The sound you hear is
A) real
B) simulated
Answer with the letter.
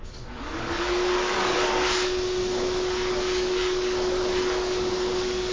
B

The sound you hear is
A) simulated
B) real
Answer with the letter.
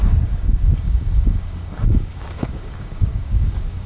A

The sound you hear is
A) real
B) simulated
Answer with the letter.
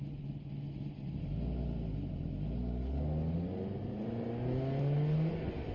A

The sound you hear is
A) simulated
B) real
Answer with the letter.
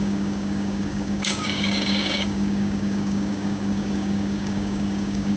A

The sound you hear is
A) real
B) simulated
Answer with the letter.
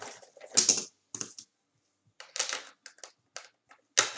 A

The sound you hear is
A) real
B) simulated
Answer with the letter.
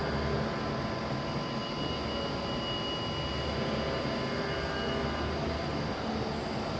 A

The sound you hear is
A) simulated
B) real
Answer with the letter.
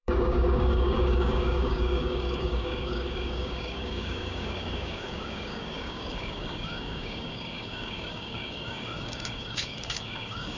A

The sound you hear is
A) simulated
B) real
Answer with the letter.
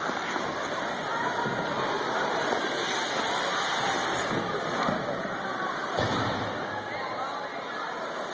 B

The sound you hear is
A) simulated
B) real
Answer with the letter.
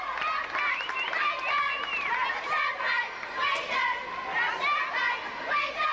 B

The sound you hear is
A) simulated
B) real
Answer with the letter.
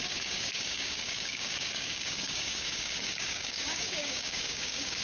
A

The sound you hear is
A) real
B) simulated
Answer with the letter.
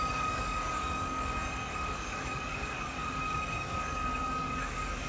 B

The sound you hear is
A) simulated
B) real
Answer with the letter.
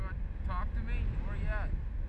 B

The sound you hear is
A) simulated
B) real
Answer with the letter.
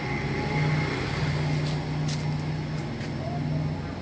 B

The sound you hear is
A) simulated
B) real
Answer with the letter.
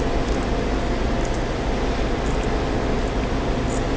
B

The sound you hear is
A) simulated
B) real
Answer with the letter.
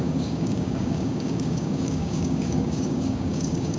A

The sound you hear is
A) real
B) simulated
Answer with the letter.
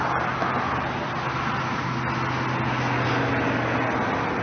A